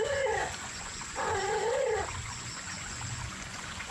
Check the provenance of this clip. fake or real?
fake